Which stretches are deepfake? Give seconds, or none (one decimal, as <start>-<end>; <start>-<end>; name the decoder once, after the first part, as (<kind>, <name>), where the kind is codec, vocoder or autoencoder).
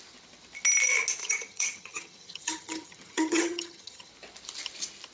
1.2-4.1 (vocoder, HiFi-GAN)